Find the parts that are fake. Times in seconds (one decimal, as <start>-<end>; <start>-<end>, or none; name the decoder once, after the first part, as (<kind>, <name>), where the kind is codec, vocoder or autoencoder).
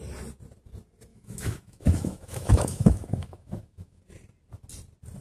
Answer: 1.1-4.0 (autoencoder, DAC-VAE)